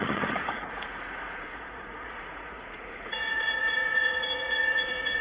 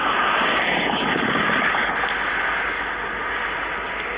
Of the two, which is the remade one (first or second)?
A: first